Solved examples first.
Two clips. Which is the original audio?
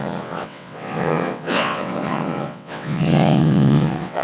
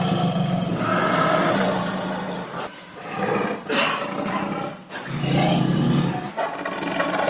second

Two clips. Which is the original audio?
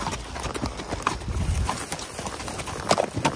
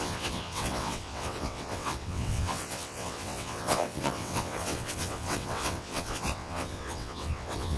first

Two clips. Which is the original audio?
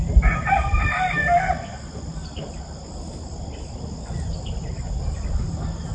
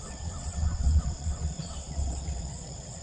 first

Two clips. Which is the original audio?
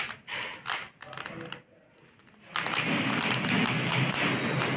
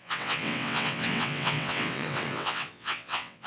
first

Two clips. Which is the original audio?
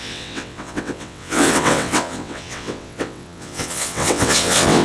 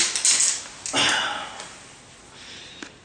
second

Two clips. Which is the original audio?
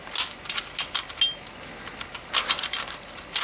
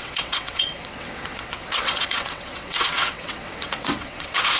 first